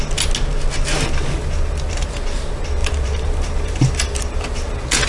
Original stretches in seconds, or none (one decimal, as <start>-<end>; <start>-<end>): 0.0-1.4; 2.0-2.8